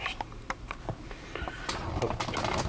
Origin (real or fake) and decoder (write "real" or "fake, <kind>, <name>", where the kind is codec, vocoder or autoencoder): real